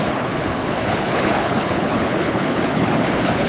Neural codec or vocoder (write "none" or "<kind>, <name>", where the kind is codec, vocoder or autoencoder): codec, HILCodec